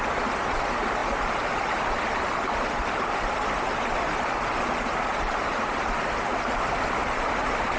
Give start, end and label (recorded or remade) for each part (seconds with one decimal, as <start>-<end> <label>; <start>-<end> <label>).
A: 0.0-7.8 recorded